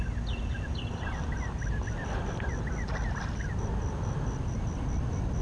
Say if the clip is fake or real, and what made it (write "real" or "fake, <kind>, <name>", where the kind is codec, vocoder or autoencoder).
real